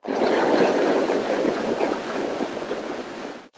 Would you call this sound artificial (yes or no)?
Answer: yes